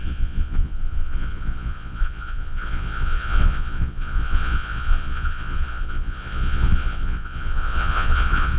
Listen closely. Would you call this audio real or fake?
fake